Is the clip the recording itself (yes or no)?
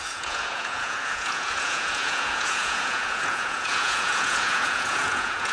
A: no